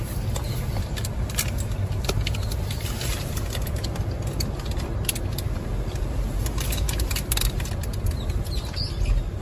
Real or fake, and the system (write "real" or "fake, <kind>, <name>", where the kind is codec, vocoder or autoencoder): real